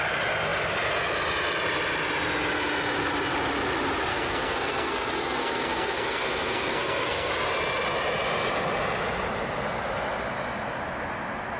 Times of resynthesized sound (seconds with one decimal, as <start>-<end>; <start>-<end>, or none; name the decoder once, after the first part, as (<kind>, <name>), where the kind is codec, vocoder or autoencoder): 4.1-7.3 (codec, SNAC)